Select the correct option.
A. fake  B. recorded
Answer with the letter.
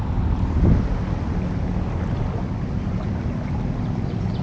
B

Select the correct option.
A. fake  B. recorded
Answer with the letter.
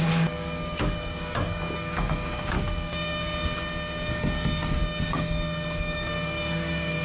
A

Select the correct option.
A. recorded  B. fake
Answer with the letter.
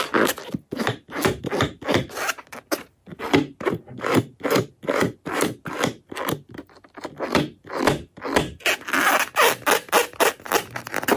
A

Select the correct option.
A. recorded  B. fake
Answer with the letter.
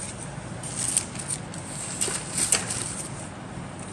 A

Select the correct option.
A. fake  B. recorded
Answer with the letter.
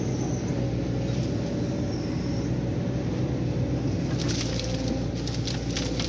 B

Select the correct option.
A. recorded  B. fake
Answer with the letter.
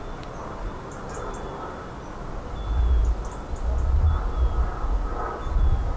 A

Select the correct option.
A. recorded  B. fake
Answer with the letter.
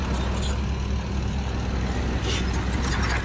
A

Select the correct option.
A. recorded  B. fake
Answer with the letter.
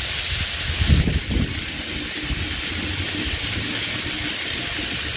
A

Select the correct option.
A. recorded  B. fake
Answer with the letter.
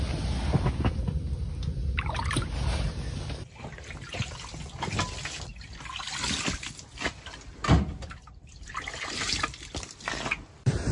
A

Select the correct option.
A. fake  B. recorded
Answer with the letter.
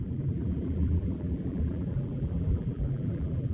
A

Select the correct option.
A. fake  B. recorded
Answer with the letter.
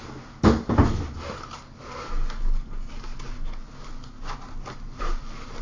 B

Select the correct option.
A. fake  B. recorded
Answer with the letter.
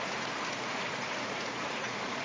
A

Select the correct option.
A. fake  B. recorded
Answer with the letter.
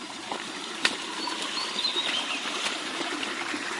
A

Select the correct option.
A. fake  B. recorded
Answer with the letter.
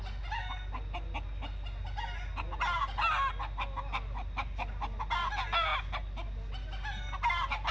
B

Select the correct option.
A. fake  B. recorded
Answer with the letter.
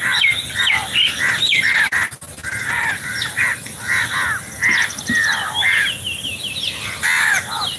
B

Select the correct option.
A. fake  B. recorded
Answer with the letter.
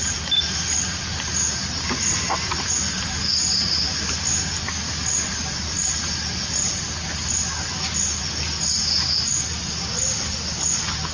B